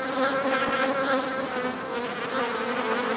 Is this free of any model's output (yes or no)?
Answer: yes